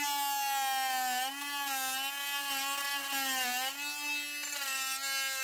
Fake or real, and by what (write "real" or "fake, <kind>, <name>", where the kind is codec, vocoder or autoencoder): real